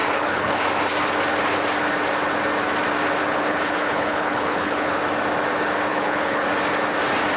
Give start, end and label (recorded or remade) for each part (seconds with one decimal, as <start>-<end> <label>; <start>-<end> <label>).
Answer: 0.0-0.6 remade; 0.6-3.2 recorded; 3.2-5.0 remade; 5.0-5.9 recorded; 5.9-6.5 remade; 6.5-7.4 recorded